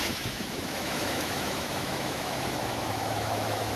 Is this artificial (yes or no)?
yes